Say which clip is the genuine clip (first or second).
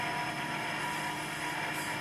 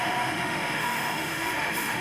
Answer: first